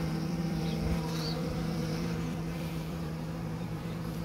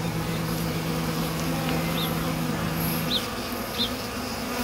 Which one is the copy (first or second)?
first